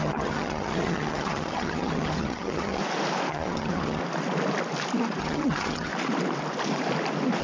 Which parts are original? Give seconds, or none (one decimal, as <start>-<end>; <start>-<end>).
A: 2.8-3.3; 4.0-5.2; 5.9-7.4